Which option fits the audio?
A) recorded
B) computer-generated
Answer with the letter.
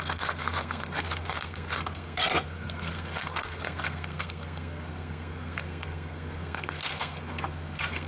B